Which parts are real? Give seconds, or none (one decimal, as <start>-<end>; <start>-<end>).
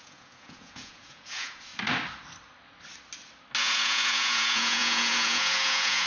1.7-3.6